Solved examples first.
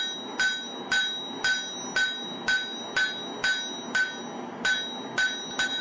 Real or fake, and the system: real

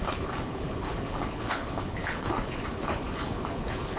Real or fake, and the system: fake, codec, HILCodec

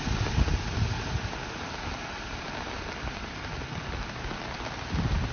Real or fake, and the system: real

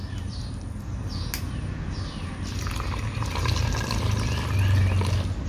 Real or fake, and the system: real